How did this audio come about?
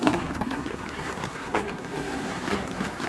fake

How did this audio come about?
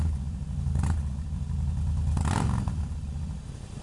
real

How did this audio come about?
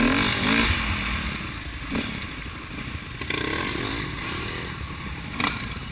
real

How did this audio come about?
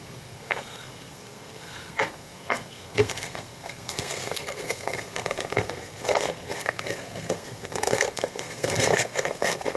fake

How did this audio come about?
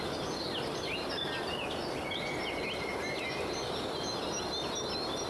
real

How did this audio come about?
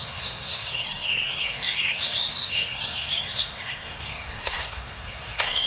fake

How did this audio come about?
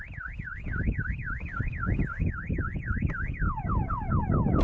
real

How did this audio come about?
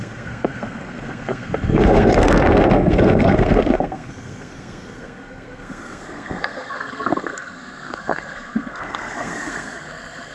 fake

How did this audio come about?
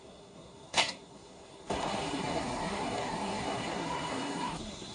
fake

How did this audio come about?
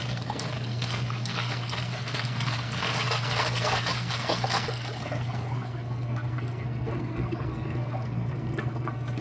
fake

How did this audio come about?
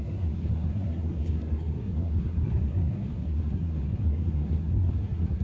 fake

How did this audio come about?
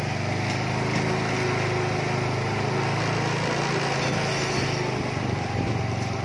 real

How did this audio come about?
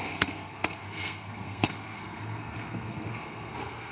fake